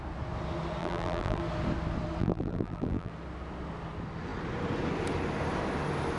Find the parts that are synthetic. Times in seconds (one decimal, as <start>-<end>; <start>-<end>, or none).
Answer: 0.8-1.4; 2.2-3.1

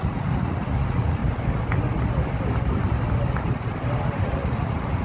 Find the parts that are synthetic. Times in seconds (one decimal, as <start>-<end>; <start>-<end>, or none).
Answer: 0.0-1.2; 4.2-5.0

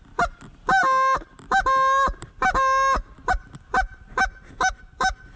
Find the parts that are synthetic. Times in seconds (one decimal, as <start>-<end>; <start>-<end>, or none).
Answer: none

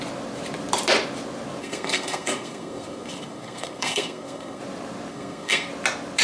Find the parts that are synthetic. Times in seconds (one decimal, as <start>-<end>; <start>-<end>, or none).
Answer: 1.6-4.6; 5.1-5.7

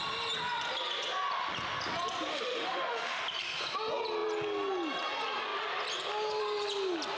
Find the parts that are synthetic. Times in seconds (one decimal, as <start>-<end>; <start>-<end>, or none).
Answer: 2.3-3.2

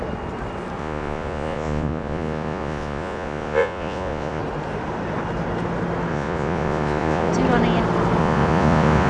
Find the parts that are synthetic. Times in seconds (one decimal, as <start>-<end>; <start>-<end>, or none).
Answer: 0.8-4.4; 6.1-7.3; 8.2-9.1

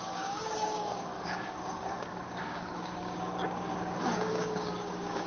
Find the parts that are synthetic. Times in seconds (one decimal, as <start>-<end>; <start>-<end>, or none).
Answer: 0.0-5.3

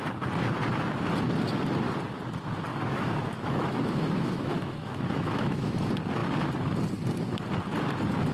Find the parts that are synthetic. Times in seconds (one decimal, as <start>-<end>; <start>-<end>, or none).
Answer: 2.7-5.7